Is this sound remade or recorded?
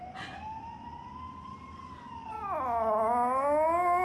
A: recorded